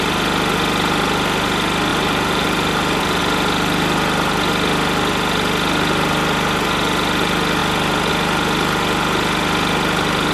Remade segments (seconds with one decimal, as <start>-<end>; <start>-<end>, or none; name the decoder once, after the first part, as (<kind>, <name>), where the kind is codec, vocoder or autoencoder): 1.9-3.2 (vocoder, BigVGAN v2)